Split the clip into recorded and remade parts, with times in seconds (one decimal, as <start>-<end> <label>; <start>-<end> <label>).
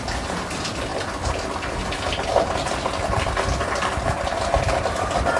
0.0-5.4 recorded